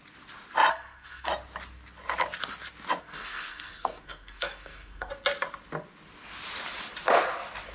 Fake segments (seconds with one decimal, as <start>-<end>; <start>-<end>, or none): 0.7-1.3; 3.0-5.1